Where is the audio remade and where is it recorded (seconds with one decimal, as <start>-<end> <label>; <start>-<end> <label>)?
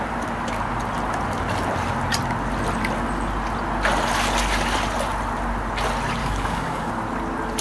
0.0-6.2 recorded; 6.2-6.9 remade; 6.9-7.6 recorded